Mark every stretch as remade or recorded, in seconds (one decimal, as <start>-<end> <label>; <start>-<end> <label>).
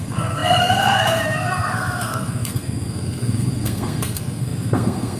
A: 0.0-5.2 remade